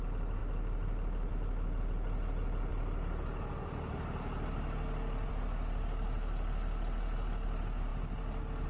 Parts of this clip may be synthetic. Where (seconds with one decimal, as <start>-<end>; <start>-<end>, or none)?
none